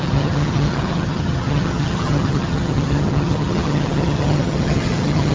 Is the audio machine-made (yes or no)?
yes